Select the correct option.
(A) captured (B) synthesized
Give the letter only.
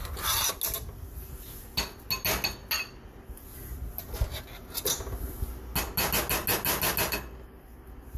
A